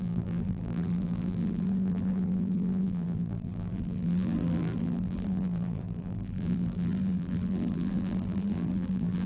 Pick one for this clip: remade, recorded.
remade